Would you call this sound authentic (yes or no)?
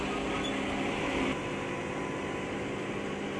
yes